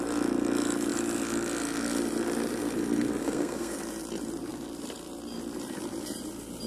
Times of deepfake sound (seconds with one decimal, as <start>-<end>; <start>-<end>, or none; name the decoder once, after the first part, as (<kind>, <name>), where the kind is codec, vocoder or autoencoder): 3.2-3.8 (codec, SNAC)